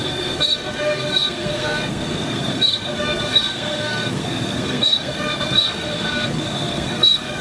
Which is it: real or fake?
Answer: fake